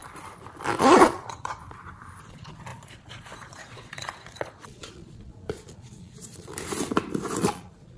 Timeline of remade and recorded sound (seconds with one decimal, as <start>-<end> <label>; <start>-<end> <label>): 0.0-0.8 recorded; 0.8-1.6 remade; 1.6-2.2 recorded; 2.2-6.5 remade; 6.5-7.4 recorded; 7.4-8.0 remade